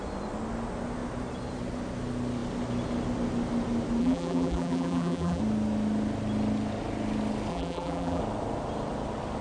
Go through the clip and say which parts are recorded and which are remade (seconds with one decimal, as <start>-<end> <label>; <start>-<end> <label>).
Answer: 0.0-4.0 recorded; 4.0-5.4 remade; 5.4-7.5 recorded; 7.5-8.2 remade; 8.2-9.4 recorded